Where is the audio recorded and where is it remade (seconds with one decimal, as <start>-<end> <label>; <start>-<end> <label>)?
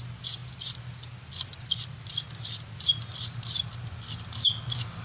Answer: 0.0-5.0 recorded